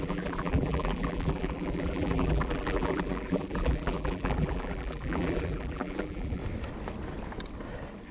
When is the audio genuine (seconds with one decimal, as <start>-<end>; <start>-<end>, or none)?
6.4-8.1

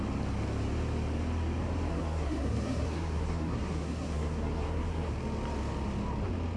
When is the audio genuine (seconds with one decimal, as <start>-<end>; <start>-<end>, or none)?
0.0-1.9; 5.1-6.6